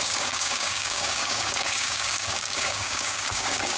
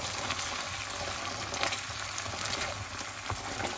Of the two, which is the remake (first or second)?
first